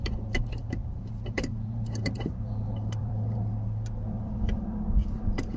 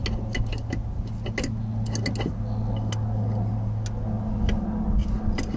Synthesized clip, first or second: first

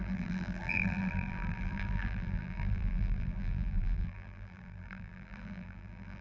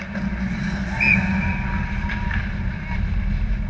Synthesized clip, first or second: first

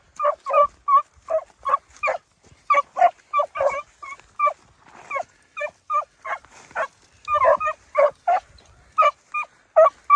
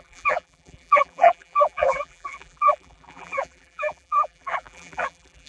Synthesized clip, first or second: second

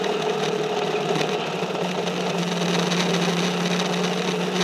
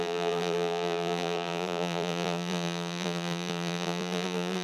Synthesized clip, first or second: second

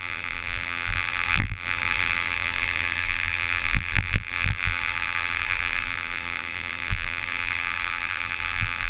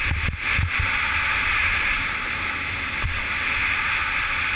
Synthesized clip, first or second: first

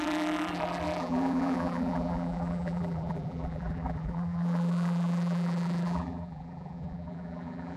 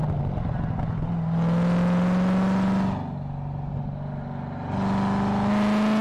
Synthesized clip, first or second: first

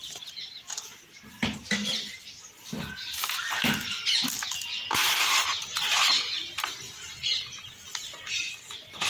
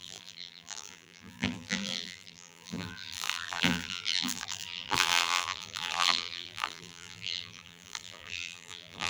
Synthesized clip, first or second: second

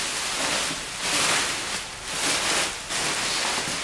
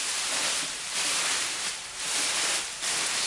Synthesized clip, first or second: second